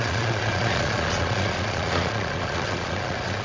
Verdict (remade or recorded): remade